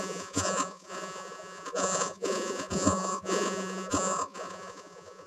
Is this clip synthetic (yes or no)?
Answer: yes